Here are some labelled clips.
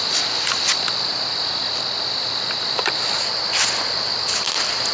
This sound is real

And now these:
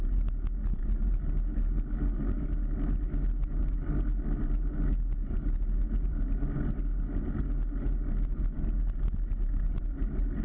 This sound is real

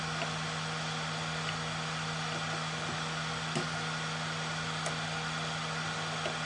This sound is real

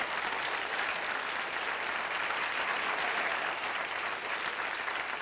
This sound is real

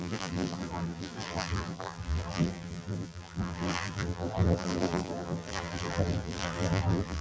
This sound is fake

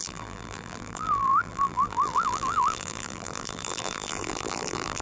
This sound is fake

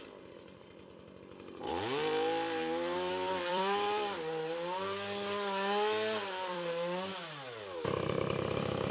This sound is fake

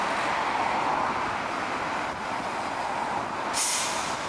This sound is real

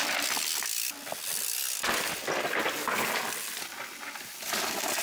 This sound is real